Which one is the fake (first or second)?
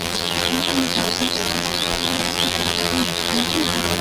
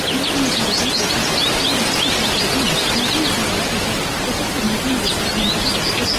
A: first